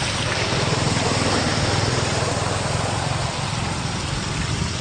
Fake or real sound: real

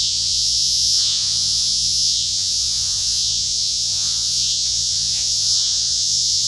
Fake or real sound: fake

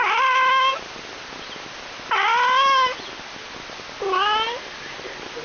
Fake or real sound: real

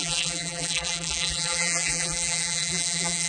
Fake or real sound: fake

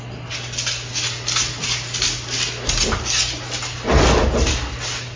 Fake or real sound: real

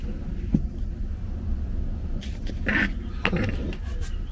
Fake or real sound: real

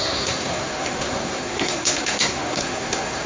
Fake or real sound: fake